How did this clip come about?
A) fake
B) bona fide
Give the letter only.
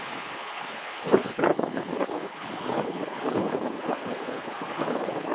A